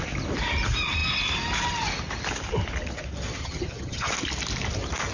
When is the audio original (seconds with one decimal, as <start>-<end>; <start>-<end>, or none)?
0.0-3.4; 4.1-5.1

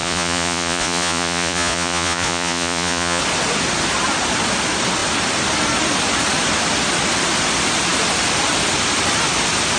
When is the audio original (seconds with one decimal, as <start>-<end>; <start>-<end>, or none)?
3.2-9.8

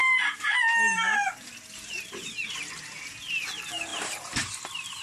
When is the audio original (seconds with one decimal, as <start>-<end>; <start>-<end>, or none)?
0.0-3.9; 4.6-5.0

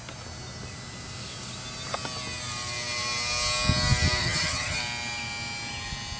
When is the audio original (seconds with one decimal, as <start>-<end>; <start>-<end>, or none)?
0.0-4.2; 4.8-6.2

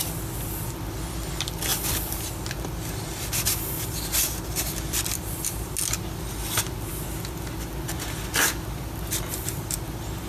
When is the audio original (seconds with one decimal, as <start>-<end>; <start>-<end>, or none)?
0.0-10.3

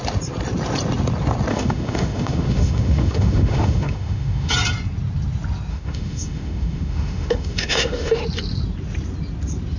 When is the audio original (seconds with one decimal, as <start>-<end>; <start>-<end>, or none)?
0.0-1.5; 4.5-5.7; 8.2-9.8

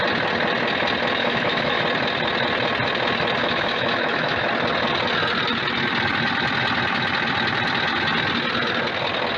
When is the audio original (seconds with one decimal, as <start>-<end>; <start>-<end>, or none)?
0.0-1.2; 1.8-3.4; 4.5-9.4

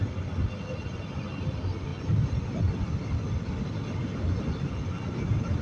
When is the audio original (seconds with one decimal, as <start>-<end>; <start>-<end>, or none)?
0.0-5.6